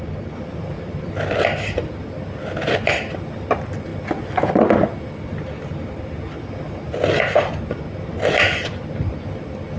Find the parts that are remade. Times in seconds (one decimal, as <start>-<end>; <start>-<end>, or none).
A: none